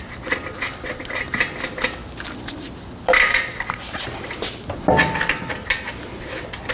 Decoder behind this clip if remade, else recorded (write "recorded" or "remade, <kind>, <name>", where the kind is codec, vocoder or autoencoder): recorded